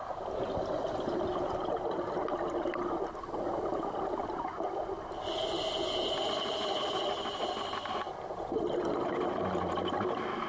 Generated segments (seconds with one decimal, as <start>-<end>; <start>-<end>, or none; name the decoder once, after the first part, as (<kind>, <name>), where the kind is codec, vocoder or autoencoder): none